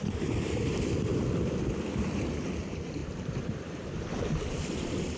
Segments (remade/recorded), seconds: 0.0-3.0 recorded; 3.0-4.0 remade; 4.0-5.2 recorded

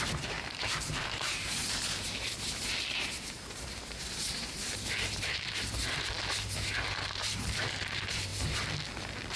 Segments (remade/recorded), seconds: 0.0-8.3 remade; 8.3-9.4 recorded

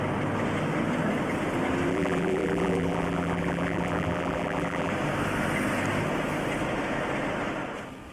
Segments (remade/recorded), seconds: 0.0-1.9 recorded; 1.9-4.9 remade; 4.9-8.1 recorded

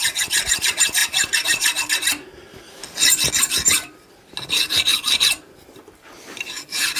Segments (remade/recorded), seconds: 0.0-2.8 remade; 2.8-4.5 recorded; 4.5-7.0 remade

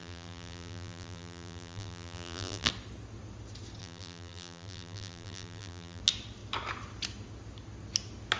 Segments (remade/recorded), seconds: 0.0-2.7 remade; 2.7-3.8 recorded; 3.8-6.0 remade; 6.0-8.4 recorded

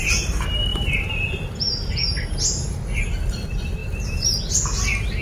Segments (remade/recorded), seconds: 0.0-0.7 recorded; 0.7-1.3 remade; 1.3-5.2 recorded